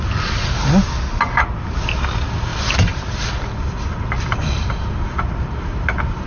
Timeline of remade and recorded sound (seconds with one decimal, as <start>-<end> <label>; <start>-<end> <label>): 0.0-6.3 recorded

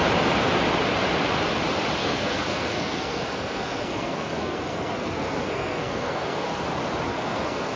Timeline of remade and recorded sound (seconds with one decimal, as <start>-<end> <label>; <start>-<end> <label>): 0.0-2.0 recorded; 2.0-6.6 remade; 6.6-7.1 recorded; 7.1-7.8 remade